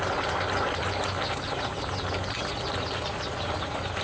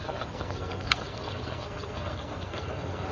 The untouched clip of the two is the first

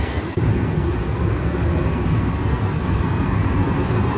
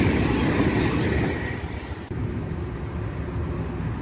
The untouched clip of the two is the second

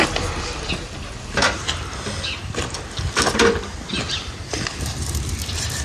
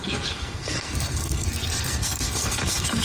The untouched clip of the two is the first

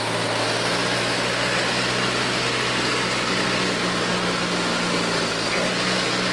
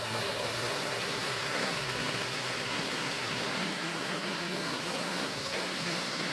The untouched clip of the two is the first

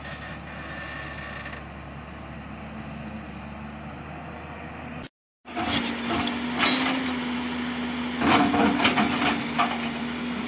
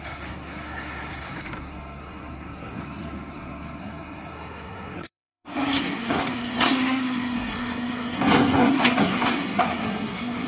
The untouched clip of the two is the first